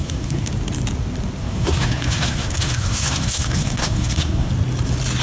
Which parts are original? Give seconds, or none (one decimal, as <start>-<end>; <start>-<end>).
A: 0.5-1.4; 4.5-5.2